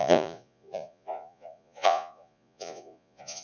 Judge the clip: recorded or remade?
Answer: remade